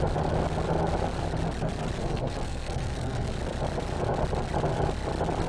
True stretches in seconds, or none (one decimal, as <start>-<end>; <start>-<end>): 0.0-2.0; 3.3-5.5